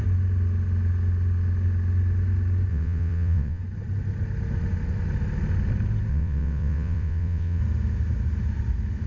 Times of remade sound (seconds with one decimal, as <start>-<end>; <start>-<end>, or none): 2.7-3.6; 6.1-7.6